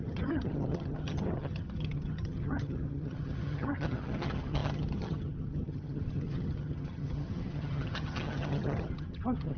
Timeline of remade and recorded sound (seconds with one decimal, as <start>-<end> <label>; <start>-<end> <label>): 0.0-9.6 remade